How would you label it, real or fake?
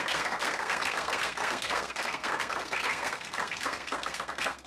fake